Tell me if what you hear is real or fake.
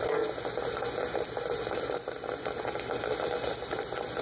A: real